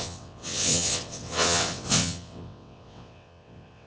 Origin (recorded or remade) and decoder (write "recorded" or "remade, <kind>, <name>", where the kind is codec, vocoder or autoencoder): remade, vocoder, WaveNeXt